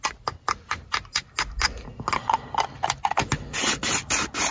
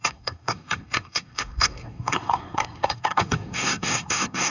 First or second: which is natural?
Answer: first